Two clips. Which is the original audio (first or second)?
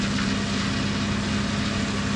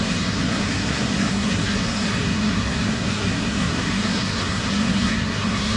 first